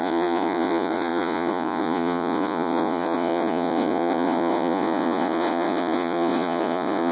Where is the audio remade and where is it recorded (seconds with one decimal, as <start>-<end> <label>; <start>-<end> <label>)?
0.0-7.1 remade